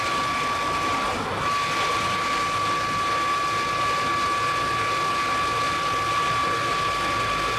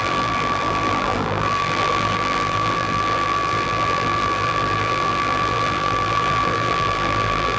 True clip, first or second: first